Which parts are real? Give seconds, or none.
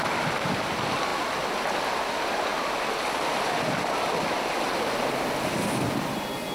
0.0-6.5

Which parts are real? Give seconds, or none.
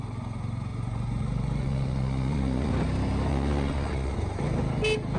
0.0-0.7; 2.7-3.3; 4.4-5.2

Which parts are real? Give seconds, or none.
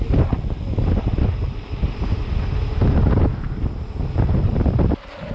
0.0-1.8; 3.0-5.3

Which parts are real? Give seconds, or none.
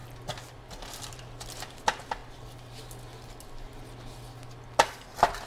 0.0-5.5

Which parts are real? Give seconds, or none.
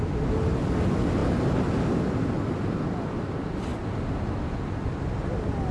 0.0-5.7